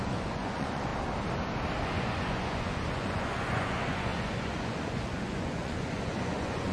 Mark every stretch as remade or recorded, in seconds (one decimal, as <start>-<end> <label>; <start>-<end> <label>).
0.0-0.9 remade; 0.9-1.8 recorded; 1.8-6.7 remade

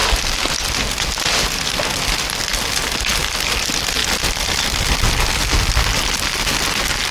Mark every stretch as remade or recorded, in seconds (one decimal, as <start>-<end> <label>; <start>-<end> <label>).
0.0-7.1 recorded

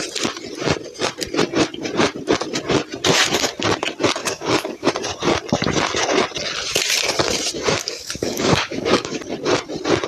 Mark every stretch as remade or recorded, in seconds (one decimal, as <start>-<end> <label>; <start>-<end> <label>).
0.0-4.2 recorded; 4.2-4.9 remade; 4.9-7.8 recorded; 7.8-9.2 remade; 9.2-10.1 recorded